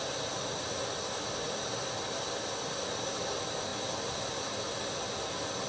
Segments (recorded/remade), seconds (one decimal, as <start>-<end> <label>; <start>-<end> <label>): 0.0-5.7 recorded